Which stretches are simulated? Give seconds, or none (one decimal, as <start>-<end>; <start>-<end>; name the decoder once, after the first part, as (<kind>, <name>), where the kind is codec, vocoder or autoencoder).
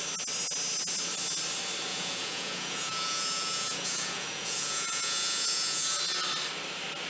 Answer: 1.9-6.0 (vocoder, Vocos)